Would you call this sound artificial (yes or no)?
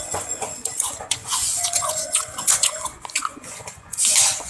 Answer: yes